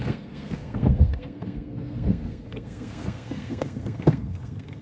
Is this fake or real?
fake